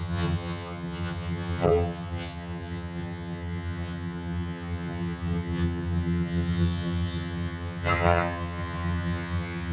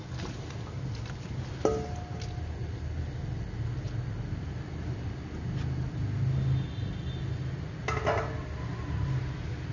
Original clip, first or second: second